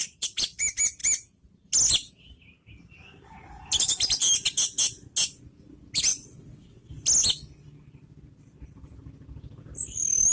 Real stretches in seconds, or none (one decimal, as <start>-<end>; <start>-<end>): 0.0-6.1; 6.9-10.3